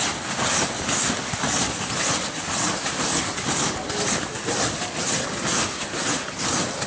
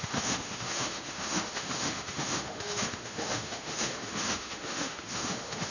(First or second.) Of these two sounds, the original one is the first